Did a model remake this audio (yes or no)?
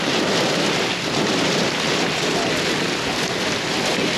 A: no